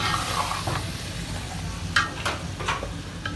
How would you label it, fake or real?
real